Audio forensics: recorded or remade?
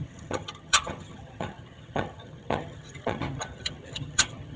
remade